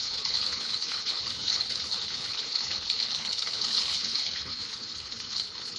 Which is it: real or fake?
fake